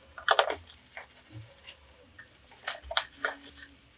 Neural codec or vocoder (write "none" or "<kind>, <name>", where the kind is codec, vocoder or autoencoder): none